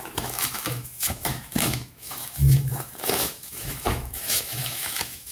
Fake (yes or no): yes